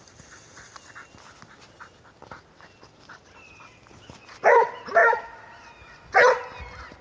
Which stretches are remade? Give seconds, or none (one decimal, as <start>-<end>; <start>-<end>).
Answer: none